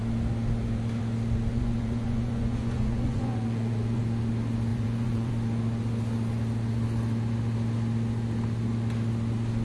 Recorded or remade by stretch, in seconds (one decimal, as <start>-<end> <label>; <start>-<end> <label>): 0.0-1.5 recorded; 1.5-4.0 remade; 4.0-4.7 recorded; 4.7-5.3 remade; 5.3-9.6 recorded